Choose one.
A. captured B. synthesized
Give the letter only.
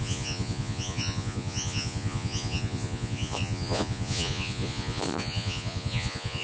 B